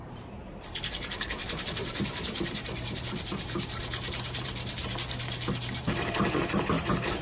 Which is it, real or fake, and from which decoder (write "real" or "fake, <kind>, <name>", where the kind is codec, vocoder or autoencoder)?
fake, vocoder, BigVGAN v2